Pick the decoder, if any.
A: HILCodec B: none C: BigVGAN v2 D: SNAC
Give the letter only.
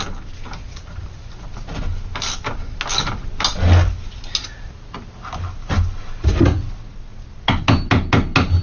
B